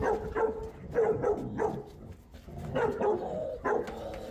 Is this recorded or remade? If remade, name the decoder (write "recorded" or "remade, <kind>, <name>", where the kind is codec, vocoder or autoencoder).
recorded